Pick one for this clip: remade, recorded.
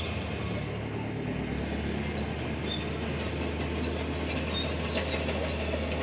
recorded